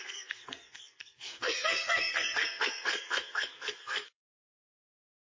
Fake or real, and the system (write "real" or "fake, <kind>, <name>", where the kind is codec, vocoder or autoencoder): fake, codec, SNAC